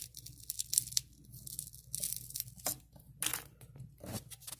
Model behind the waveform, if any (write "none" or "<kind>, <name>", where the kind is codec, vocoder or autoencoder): none